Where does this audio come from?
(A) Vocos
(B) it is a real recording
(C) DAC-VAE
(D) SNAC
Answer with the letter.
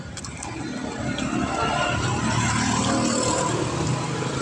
B